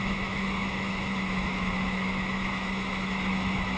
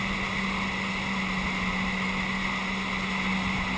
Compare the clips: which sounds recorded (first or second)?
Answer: second